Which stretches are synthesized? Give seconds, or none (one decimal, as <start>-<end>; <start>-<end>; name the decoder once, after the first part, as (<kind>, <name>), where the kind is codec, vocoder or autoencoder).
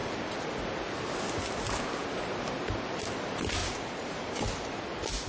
3.6-4.8 (vocoder, BigVGAN v2)